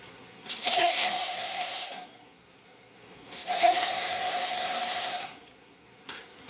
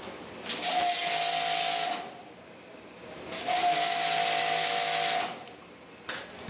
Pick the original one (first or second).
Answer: second